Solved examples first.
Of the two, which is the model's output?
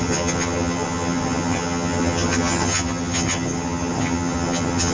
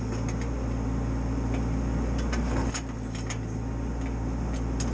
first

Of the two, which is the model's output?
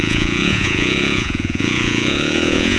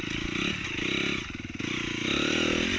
first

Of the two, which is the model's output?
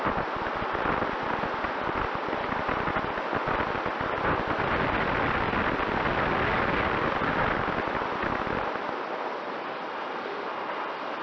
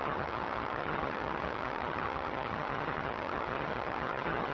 second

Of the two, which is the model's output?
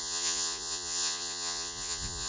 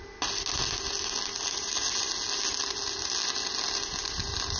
first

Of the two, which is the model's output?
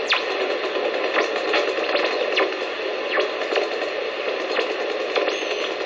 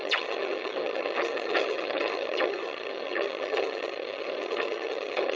second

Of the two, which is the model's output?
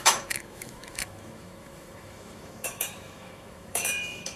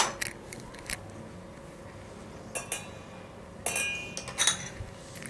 first